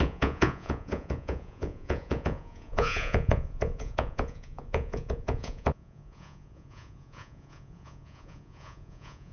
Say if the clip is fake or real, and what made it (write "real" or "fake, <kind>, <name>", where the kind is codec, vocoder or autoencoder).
fake, vocoder, Vocos